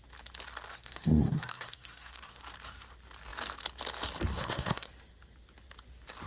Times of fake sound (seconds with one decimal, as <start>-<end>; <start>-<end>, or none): 0.7-2.4; 4.3-4.9